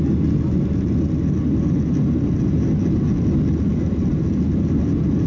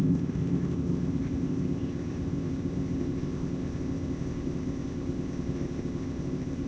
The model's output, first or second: second